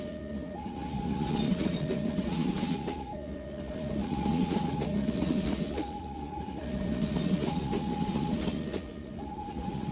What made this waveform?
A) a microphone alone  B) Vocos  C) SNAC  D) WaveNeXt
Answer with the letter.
B